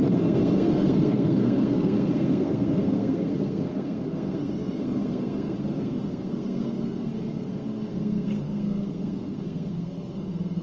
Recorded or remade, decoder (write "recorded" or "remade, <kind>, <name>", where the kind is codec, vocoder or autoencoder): remade, codec, SNAC